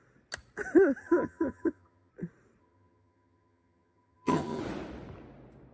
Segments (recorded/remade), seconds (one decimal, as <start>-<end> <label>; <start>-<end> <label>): 0.0-1.0 recorded; 1.0-2.1 remade; 2.1-2.6 recorded; 2.6-4.6 remade; 4.6-5.7 recorded